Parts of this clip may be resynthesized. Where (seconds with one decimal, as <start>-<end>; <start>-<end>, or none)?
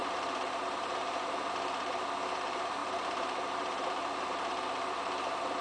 0.0-0.9; 2.8-5.6